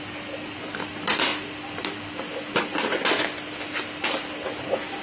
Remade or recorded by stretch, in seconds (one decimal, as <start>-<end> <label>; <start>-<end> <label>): 0.0-5.0 recorded